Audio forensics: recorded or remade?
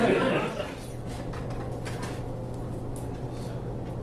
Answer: recorded